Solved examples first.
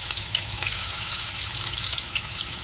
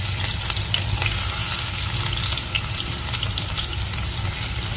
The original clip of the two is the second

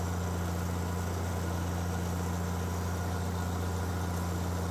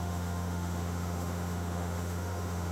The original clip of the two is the first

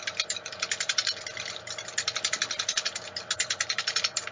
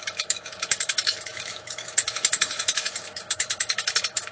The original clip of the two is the first